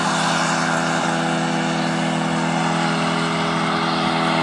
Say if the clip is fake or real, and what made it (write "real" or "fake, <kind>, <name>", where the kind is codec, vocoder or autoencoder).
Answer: real